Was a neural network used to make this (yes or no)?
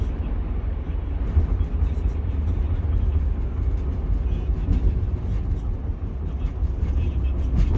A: no